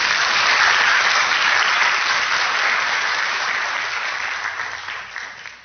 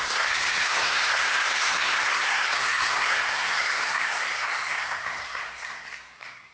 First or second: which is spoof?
second